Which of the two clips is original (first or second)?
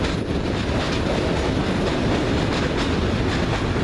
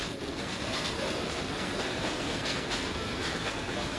first